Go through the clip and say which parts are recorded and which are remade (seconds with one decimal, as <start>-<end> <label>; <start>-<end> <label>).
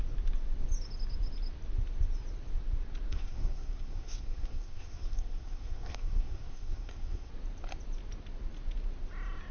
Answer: 0.0-3.1 recorded; 3.1-7.3 remade; 7.3-9.5 recorded